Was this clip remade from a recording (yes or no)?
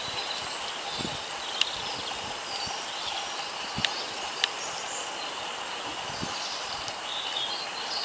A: no